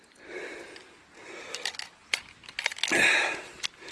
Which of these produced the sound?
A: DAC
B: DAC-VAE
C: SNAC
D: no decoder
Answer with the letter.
D